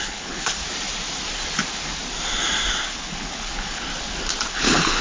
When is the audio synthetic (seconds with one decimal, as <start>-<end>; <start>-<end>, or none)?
0.0-0.6; 2.7-3.9; 4.5-5.0